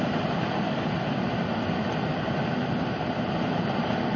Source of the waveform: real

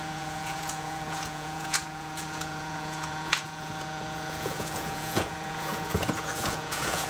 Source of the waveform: fake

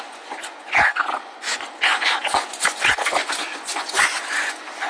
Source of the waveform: fake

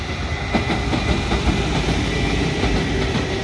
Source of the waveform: real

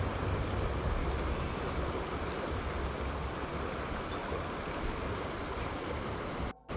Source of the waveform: real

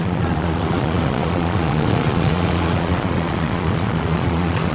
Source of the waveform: fake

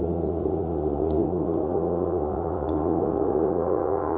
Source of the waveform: fake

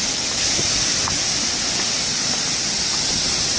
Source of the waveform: real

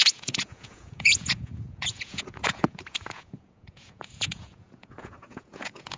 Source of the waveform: fake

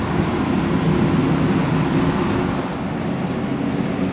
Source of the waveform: real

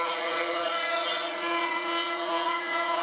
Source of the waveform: fake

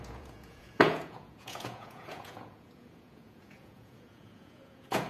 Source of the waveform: fake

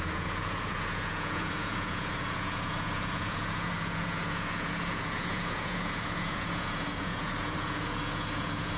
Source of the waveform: fake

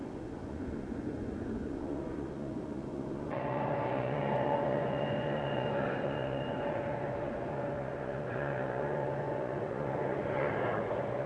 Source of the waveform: fake